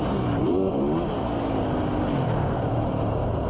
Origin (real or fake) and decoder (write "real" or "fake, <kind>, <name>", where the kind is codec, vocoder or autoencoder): real